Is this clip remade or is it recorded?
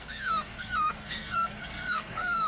remade